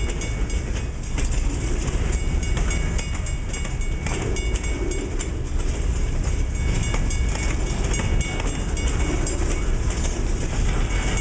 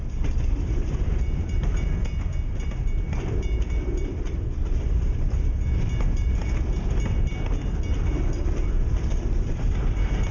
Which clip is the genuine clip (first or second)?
first